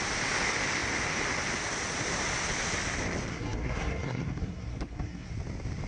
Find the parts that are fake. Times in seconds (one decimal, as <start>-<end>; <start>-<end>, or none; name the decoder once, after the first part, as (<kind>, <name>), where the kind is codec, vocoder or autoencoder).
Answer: 3.3-5.3 (codec, SNAC)